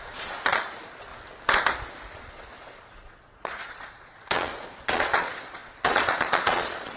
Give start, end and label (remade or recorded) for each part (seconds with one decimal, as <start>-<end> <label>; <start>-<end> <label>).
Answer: 0.0-1.1 remade; 1.1-2.2 recorded; 2.2-7.0 remade